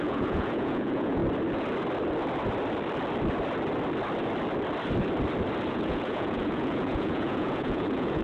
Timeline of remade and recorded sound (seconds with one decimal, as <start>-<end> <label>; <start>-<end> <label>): 0.0-1.2 remade; 1.2-5.7 recorded; 5.7-8.2 remade